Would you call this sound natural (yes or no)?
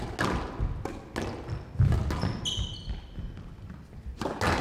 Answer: yes